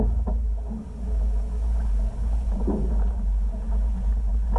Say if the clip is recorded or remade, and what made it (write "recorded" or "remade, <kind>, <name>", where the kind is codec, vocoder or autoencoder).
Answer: recorded